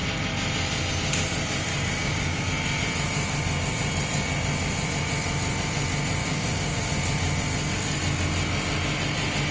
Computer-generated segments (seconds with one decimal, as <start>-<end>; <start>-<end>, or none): 1.7-2.4; 6.2-6.9